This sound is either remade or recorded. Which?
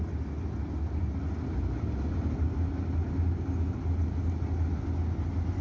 recorded